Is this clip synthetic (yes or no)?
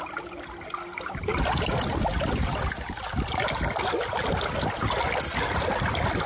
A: no